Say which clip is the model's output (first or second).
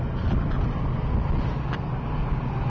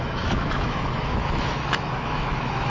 second